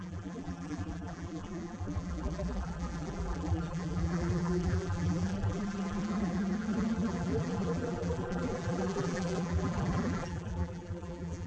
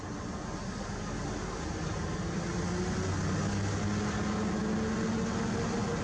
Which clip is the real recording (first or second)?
second